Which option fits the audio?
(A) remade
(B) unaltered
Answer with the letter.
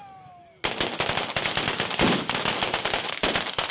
B